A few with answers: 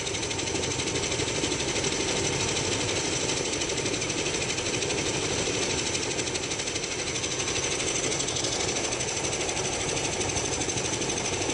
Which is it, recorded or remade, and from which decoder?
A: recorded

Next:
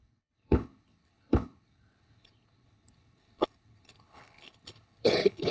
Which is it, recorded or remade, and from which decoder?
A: remade, codec, HILCodec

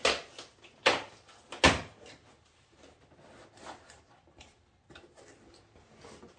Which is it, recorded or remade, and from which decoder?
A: recorded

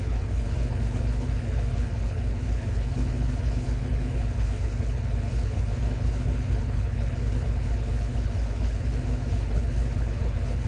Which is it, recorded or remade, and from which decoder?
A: remade, codec, HILCodec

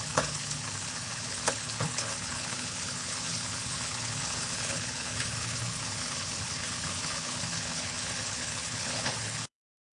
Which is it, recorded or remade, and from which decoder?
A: remade, codec, HILCodec